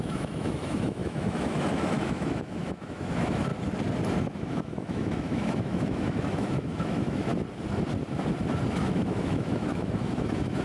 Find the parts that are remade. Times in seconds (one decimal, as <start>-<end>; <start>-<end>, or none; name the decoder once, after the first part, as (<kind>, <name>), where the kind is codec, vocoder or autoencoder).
0.0-3.5 (autoencoder, DAC-VAE); 4.1-7.3; 8.7-10.6